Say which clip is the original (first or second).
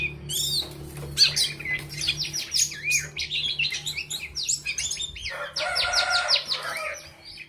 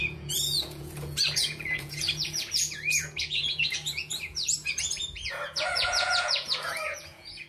first